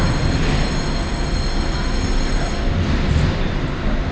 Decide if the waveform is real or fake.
real